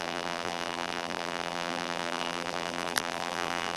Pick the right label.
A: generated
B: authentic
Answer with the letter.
A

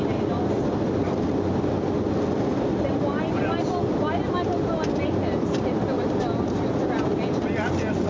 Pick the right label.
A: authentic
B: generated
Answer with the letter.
A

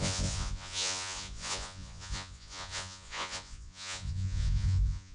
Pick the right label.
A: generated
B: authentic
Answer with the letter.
A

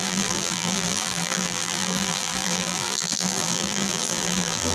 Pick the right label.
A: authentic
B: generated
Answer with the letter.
B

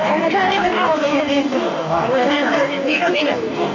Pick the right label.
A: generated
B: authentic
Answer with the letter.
A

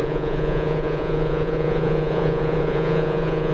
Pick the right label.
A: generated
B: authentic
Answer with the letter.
A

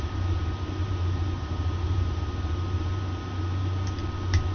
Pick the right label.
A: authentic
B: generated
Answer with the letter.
B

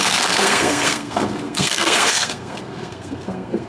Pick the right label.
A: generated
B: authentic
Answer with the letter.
A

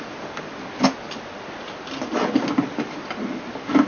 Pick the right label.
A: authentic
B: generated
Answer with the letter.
A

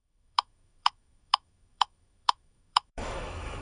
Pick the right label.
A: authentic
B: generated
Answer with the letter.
B